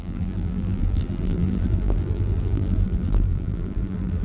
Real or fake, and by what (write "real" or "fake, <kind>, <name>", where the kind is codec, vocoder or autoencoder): fake, vocoder, BigVGAN v2